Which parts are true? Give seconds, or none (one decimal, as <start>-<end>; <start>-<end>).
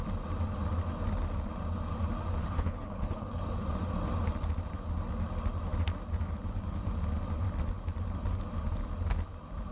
0.0-2.4; 3.4-9.7